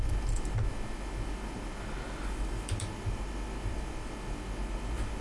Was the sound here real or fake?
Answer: real